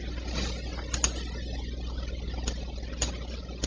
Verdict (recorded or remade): recorded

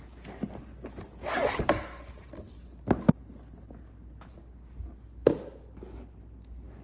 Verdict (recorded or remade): recorded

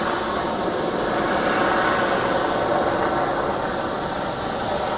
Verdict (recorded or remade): recorded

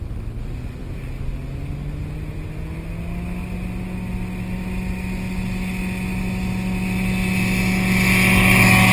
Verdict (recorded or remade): recorded